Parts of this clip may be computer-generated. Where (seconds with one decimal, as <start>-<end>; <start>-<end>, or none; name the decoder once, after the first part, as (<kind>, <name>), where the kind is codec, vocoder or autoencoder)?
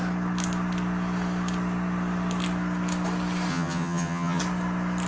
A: 3.5-4.4 (vocoder, HiFi-GAN)